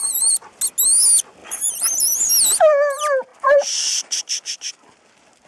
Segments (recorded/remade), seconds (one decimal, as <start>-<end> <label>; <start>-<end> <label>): 0.0-0.6 remade; 0.6-1.4 recorded; 1.4-2.3 remade; 2.3-3.3 recorded; 3.3-4.7 remade; 4.7-5.5 recorded